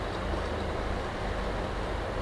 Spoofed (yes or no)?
no